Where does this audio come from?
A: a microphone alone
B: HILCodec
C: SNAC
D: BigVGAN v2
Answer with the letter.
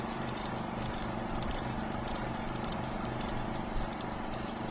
D